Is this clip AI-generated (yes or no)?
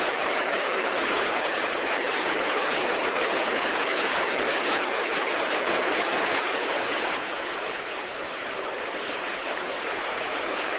yes